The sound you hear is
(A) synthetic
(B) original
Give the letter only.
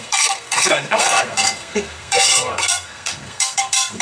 A